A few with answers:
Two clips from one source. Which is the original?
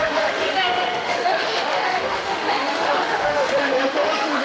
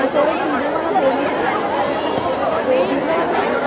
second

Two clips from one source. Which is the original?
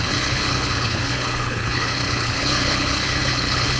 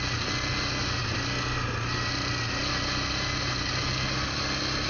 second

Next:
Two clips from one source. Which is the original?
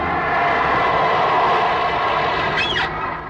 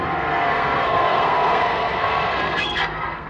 first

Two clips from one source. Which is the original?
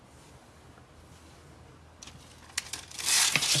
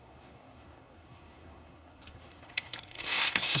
first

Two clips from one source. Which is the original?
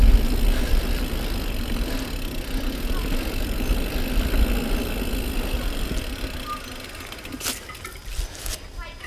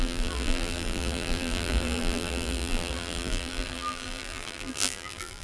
first